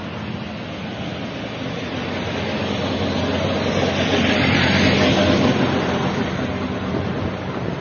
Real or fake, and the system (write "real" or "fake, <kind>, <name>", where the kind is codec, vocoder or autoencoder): real